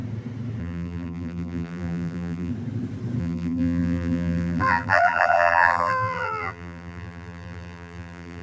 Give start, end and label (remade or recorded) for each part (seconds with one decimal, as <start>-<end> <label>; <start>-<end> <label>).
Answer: 0.0-0.6 recorded; 0.6-2.5 remade; 2.5-3.2 recorded; 3.2-8.4 remade